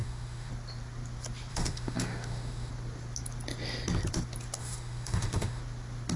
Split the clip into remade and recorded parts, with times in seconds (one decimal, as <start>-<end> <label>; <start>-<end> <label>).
0.0-0.5 remade; 0.5-1.5 recorded; 1.5-2.7 remade; 2.7-4.6 recorded; 4.6-5.6 remade; 5.6-6.2 recorded